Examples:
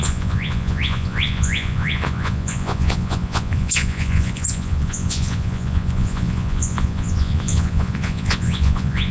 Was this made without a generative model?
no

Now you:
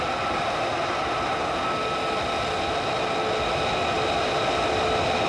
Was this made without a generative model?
yes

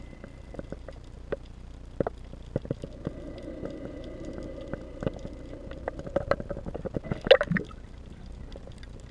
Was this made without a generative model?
yes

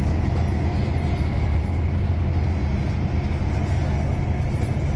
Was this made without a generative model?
yes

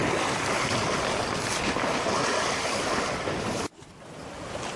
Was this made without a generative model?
yes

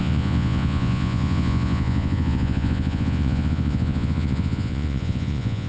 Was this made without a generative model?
no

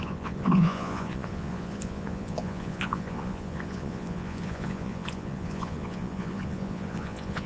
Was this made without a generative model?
no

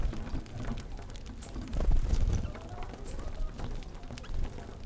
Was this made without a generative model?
yes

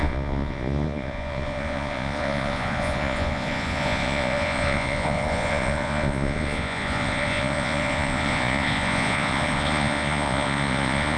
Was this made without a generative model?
no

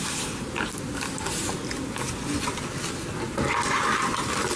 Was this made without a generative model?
yes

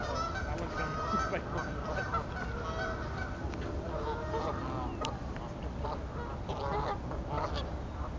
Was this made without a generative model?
yes